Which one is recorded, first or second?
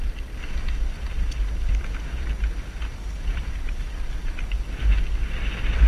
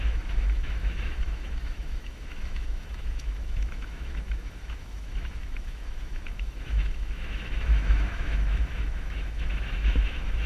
first